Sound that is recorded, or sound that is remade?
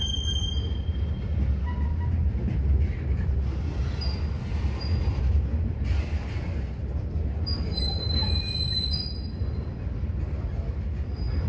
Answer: recorded